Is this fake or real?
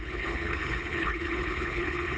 fake